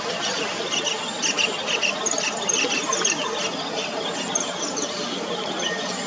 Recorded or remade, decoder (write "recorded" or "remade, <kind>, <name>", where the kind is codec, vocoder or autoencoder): recorded